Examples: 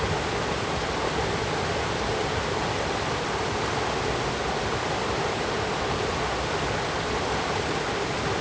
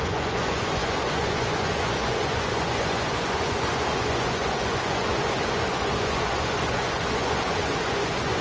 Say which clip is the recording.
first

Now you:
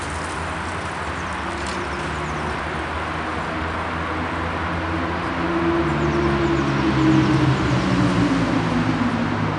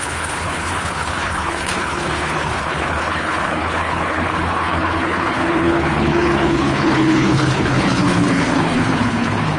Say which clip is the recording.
first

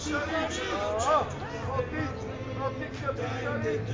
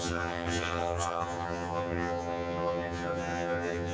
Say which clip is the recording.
first